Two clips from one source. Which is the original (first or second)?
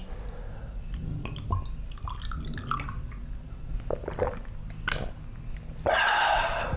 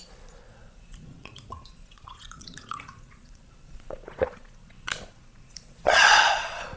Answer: first